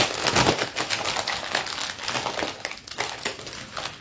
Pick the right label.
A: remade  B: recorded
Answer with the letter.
B